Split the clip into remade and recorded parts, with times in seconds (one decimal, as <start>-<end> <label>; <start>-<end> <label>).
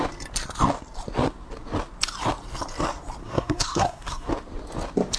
0.0-3.2 recorded; 3.2-4.3 remade; 4.3-5.2 recorded